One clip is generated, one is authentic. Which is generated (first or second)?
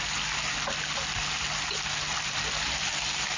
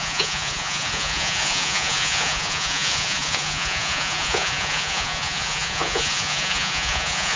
second